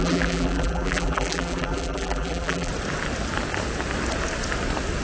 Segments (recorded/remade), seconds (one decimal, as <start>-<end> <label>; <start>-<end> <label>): 0.0-2.7 remade; 2.7-5.0 recorded